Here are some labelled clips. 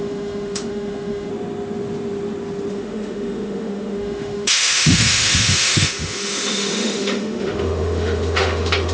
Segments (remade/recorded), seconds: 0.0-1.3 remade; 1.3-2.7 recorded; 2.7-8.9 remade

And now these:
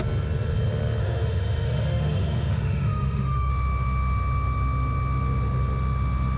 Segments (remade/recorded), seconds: 0.0-1.0 recorded; 1.0-3.5 remade; 3.5-6.4 recorded

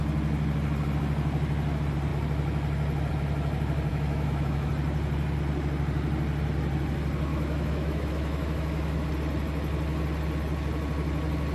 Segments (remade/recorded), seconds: 0.0-3.9 recorded; 3.9-4.7 remade; 4.7-7.3 recorded; 7.3-9.1 remade; 9.1-11.5 recorded

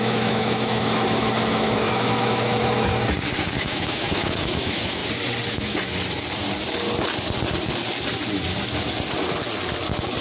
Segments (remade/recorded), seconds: 0.0-2.9 remade; 2.9-3.4 recorded; 3.4-5.0 remade; 5.0-5.5 recorded; 5.5-5.9 remade; 5.9-10.2 recorded